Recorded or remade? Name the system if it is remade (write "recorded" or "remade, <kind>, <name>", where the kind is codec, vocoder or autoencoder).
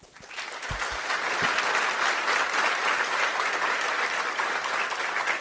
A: recorded